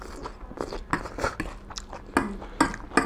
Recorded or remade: recorded